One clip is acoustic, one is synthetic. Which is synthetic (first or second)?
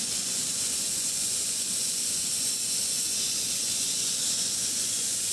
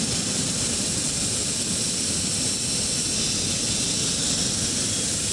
first